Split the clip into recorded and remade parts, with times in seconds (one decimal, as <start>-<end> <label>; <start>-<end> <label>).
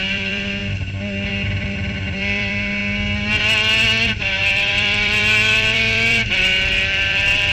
0.0-0.6 remade; 0.6-1.3 recorded; 1.3-2.8 remade; 2.8-4.4 recorded; 4.4-7.5 remade